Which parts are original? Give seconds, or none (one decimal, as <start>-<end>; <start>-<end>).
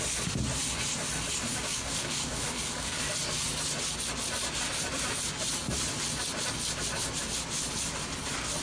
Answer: 0.0-1.5; 3.1-8.6